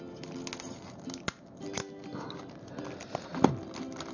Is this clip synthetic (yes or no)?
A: no